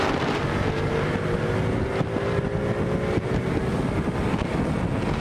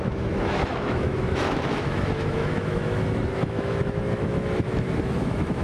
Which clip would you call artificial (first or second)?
second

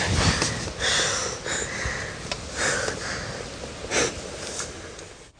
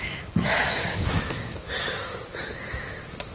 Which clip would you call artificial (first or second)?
second